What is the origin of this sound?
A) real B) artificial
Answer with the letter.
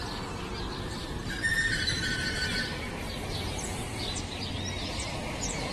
A